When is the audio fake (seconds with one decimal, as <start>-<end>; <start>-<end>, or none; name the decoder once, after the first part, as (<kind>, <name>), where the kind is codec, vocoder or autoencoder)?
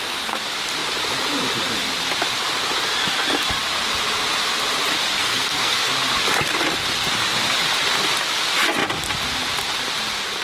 5.2-5.9 (codec, SNAC)